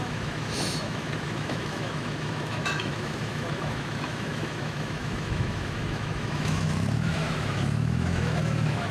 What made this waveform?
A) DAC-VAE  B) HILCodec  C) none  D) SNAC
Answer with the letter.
A